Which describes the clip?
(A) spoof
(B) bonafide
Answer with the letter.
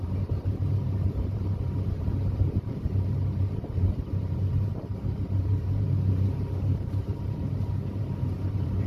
A